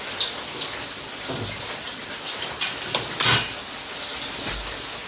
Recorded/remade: recorded